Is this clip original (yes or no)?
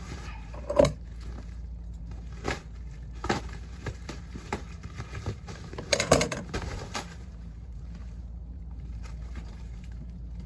no